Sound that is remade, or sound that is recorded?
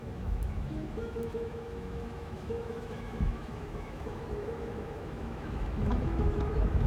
remade